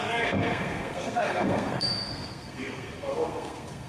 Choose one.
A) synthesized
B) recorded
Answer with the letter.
A